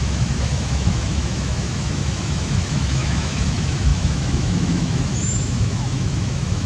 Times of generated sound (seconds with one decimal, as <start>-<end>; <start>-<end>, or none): 0.0-6.7